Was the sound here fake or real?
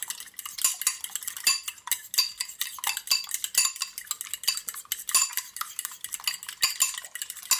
real